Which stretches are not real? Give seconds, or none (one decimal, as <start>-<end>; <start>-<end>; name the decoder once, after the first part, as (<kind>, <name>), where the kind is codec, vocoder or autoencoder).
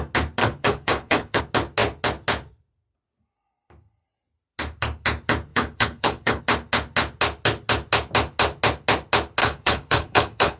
0.4-1.4 (codec, HILCodec); 5.5-6.4; 9.4-10.6